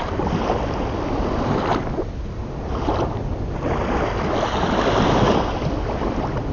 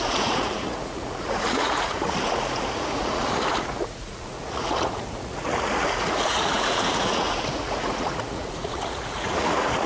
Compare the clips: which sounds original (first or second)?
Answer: first